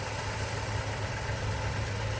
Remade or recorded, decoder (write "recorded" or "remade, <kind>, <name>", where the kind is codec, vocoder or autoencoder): recorded